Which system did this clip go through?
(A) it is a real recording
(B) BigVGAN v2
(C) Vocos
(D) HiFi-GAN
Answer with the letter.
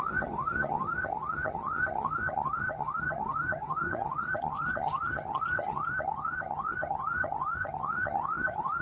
D